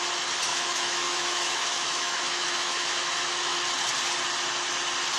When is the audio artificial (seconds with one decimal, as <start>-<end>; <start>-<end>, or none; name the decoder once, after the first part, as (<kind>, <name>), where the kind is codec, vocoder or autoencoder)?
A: 0.5-3.6 (autoencoder, DAC-VAE)